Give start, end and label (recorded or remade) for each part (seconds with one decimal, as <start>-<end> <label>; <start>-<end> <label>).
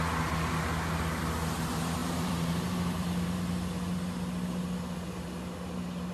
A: 0.0-2.0 recorded; 2.0-3.4 remade; 3.4-6.1 recorded